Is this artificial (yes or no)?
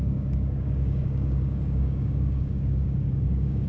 yes